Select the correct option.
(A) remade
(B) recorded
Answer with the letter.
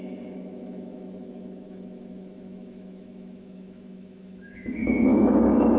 A